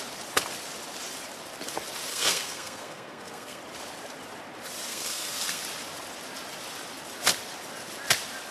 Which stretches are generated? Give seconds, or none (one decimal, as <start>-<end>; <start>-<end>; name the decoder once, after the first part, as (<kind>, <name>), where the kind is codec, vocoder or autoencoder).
2.1-3.6 (codec, SNAC); 4.9-5.6